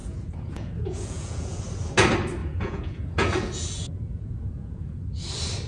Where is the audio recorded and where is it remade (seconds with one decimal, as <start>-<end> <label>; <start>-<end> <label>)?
0.0-1.6 remade; 1.6-2.4 recorded; 2.4-5.0 remade; 5.0-5.7 recorded